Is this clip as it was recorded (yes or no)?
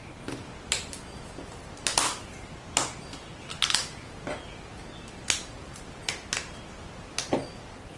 yes